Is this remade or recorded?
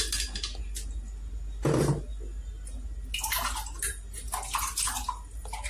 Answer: recorded